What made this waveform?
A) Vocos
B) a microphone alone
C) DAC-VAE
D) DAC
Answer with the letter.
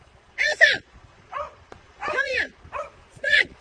A